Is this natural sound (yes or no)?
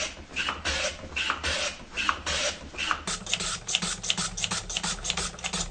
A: yes